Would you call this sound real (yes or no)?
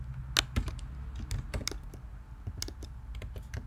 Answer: yes